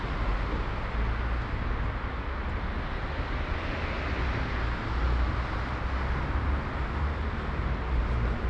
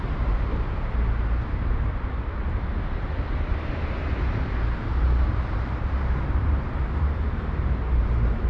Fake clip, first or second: second